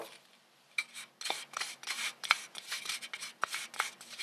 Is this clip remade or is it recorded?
recorded